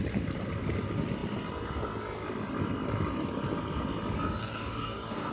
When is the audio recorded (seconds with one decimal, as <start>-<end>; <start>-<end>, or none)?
0.0-4.4